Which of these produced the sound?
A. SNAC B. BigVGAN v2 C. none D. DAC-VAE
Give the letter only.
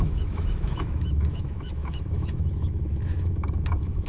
D